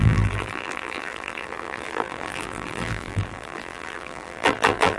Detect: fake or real fake